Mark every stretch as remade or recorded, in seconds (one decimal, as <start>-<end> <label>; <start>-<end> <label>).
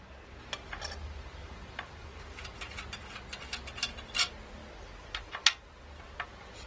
0.0-1.4 recorded; 1.4-2.2 remade; 2.2-6.7 recorded